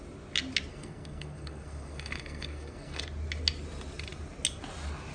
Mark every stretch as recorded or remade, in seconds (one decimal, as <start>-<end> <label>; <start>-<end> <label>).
0.0-0.7 recorded; 0.7-3.0 remade; 3.0-5.1 recorded